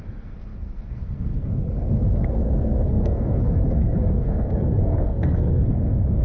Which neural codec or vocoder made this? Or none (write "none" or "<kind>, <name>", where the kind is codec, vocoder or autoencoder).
codec, SNAC